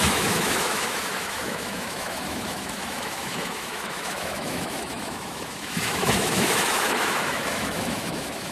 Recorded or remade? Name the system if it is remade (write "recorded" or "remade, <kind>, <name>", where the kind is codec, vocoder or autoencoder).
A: remade, autoencoder, DAC-VAE